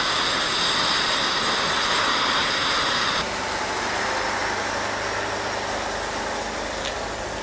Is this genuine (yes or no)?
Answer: yes